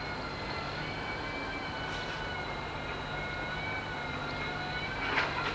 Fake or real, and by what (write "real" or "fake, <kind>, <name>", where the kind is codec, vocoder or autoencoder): real